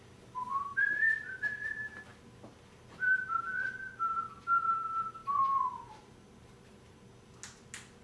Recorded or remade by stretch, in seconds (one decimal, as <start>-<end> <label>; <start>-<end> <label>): 0.0-5.2 recorded; 5.2-7.1 remade; 7.1-8.0 recorded